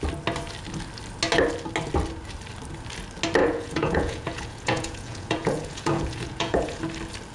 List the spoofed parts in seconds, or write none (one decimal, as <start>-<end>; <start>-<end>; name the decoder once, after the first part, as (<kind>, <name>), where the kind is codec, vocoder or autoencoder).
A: 3.4-6.8 (vocoder, Vocos)

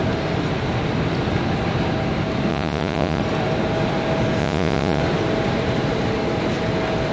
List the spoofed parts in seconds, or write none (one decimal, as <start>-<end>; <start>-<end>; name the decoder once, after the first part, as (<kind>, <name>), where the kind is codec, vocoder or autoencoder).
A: 2.5-3.2 (vocoder, Vocos); 4.4-5.0

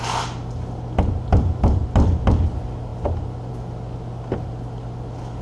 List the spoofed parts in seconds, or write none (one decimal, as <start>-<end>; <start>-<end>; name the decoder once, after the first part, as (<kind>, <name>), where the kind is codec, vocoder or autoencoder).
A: none

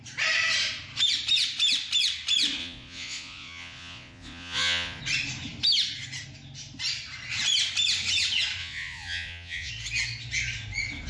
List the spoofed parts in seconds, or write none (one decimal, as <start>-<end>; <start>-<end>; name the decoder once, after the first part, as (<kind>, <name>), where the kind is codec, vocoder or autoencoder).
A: 2.6-5.0 (vocoder, Vocos); 8.6-9.7

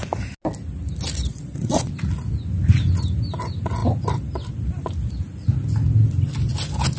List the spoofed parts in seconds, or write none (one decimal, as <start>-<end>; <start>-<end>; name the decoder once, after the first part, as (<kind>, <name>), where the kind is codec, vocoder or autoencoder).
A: 1.3-1.9 (vocoder, Vocos)